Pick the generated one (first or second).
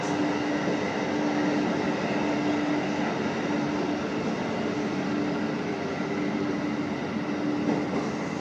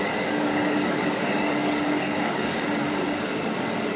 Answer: second